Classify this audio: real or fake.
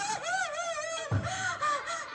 fake